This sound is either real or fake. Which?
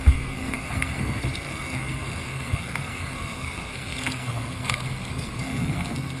fake